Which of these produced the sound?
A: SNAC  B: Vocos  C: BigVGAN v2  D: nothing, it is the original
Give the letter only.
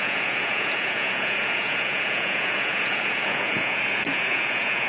B